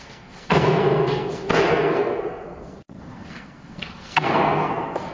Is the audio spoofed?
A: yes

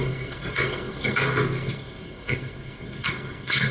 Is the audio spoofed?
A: yes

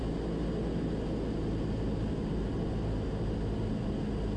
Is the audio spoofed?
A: no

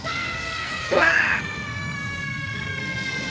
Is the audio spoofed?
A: yes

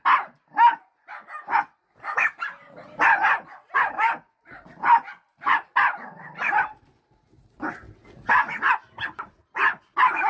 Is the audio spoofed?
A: no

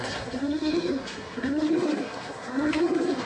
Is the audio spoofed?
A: yes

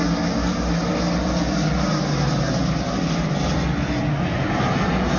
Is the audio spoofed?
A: no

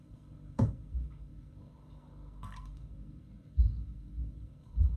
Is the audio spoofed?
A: yes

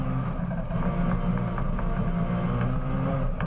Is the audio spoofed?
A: no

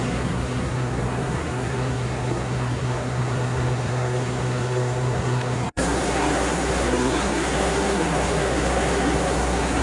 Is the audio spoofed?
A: yes